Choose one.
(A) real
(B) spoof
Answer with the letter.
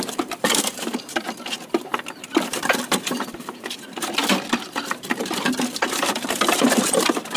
B